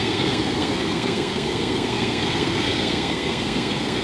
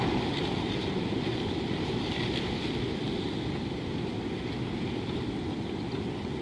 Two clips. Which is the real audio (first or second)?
second